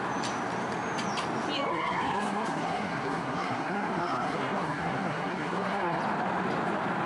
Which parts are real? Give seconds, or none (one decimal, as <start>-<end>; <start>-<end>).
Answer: 0.0-1.7; 6.0-7.1